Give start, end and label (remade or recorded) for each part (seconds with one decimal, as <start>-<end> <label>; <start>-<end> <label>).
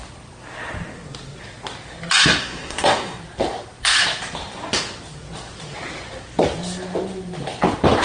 0.0-2.4 recorded; 2.4-3.2 remade; 3.2-8.0 recorded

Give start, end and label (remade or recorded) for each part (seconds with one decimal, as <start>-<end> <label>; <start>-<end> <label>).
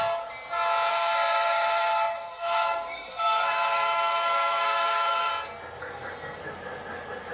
0.0-0.9 recorded; 0.9-5.3 remade; 5.3-5.8 recorded; 5.8-6.4 remade; 6.4-7.3 recorded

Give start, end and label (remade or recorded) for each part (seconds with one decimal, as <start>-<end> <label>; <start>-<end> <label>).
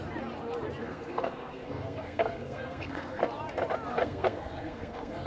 0.0-0.8 recorded; 0.8-3.2 remade; 3.2-3.9 recorded; 3.9-5.3 remade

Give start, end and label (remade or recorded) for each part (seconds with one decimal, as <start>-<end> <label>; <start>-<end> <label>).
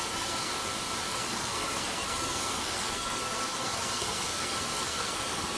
0.0-0.5 remade; 0.5-1.1 recorded; 1.1-5.6 remade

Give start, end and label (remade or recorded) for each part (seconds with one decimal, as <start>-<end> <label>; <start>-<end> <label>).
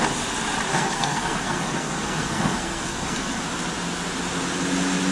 0.0-0.7 recorded; 0.7-3.4 remade; 3.4-5.1 recorded